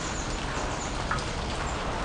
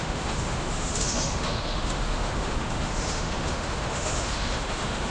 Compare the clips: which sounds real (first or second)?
first